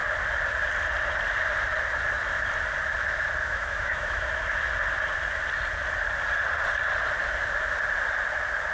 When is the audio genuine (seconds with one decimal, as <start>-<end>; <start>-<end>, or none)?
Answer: 0.0-3.4; 4.3-8.7